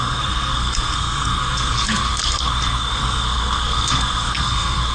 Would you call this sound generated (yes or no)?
yes